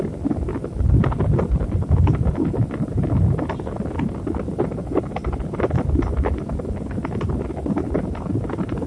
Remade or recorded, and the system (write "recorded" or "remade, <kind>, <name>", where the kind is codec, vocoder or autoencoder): recorded